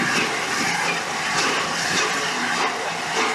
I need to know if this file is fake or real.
real